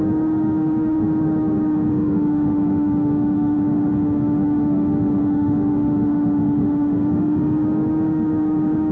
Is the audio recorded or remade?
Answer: remade